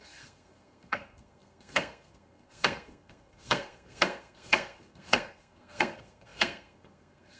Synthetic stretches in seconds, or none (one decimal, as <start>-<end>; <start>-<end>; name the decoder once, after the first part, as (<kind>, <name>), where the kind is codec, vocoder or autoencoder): 0.0-7.4 (codec, SNAC)